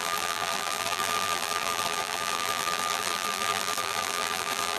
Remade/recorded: remade